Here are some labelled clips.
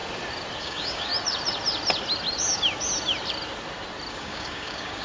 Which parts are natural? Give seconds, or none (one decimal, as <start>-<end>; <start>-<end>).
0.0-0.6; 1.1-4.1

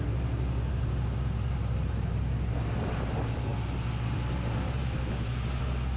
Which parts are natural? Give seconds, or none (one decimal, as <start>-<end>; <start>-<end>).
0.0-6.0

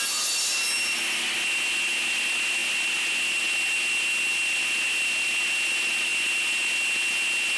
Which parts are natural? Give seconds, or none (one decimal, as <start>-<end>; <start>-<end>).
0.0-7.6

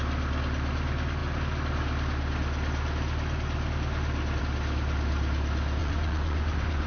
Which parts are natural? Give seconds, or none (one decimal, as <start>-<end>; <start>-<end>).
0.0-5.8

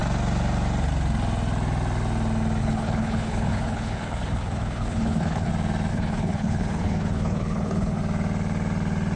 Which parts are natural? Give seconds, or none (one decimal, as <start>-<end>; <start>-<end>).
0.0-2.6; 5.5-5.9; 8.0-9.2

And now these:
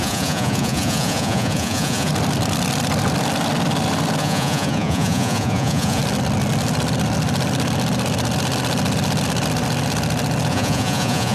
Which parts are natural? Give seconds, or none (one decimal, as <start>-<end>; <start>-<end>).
2.1-4.2; 6.0-10.5

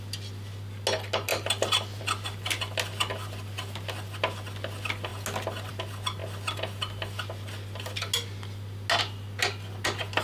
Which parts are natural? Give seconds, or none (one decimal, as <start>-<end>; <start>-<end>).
0.0-10.2

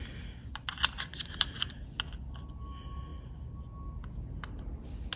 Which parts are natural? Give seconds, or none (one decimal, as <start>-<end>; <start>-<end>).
0.0-1.1; 1.8-5.2